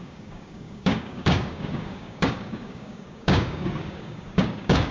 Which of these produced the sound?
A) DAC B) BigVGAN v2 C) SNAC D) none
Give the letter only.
A